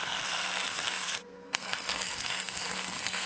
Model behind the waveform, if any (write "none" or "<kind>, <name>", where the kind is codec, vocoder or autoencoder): codec, SNAC